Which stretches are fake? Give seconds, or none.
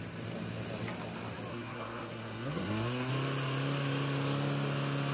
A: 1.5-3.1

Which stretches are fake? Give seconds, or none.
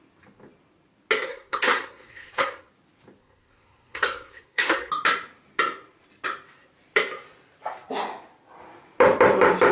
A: 1.3-2.7; 3.2-4.9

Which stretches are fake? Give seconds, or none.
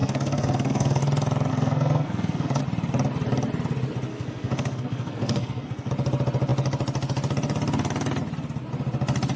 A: 0.0-1.0; 1.5-2.6; 4.1-5.9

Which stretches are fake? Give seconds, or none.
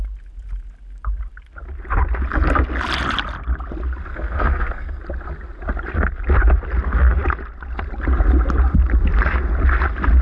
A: 4.1-5.0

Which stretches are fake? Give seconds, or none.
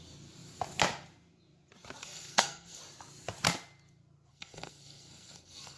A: 2.0-2.8; 4.3-5.8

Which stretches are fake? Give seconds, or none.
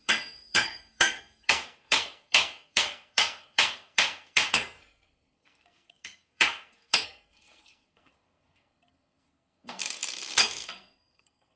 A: 0.0-11.6